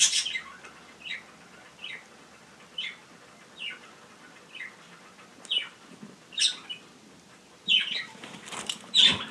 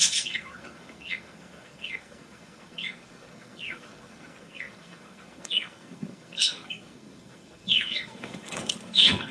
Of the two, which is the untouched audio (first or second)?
first